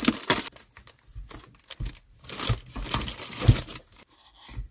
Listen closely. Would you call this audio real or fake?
real